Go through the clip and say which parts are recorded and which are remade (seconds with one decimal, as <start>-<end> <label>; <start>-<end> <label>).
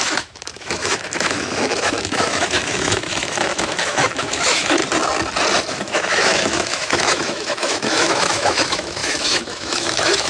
0.0-4.8 remade; 4.8-5.7 recorded; 5.7-10.3 remade